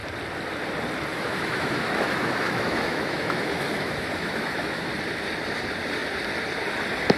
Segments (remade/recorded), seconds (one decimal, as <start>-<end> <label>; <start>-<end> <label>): 0.0-1.1 recorded; 1.1-4.9 remade; 4.9-7.2 recorded